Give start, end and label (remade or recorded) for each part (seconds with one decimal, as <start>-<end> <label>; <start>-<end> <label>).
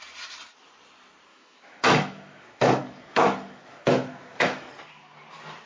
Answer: 0.0-1.3 recorded; 1.3-4.7 remade; 4.7-5.7 recorded